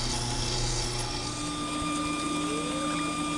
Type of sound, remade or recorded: recorded